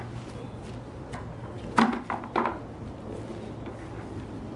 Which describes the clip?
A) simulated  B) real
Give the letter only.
B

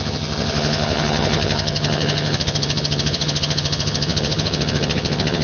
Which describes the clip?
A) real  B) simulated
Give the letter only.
B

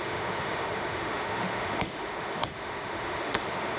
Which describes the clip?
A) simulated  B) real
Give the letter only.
A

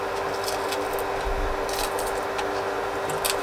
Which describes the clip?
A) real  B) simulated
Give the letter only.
A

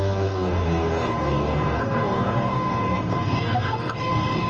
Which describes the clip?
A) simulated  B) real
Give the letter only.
A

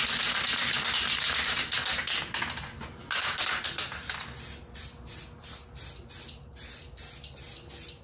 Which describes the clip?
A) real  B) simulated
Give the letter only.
A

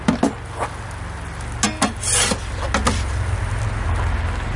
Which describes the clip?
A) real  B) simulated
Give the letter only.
A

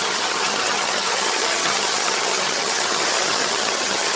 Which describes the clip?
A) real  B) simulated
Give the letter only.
B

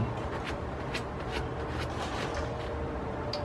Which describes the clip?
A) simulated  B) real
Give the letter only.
B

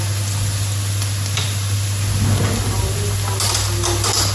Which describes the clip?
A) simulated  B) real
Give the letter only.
B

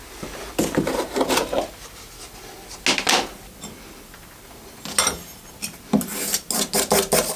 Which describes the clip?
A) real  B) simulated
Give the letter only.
A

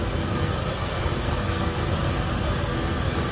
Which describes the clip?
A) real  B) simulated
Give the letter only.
B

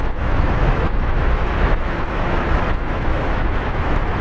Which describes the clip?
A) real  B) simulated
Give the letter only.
B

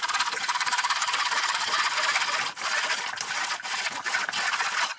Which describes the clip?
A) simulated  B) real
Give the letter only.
B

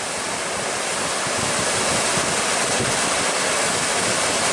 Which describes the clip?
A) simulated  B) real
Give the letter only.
B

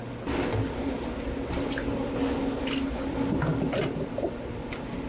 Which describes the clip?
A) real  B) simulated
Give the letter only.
A